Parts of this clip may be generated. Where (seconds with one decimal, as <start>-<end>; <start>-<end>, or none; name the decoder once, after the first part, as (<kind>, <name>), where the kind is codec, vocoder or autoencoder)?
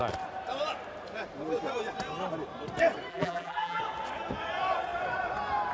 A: 3.1-3.8 (vocoder, BigVGAN v2)